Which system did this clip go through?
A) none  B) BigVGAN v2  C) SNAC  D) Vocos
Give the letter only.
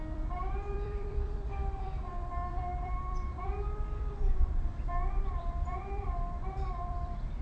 B